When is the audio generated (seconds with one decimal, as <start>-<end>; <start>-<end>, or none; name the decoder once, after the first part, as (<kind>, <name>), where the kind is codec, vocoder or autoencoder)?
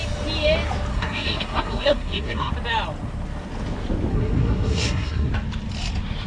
0.9-2.5 (codec, SNAC); 4.1-5.3